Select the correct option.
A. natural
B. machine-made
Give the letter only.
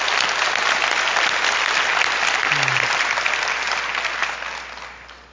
A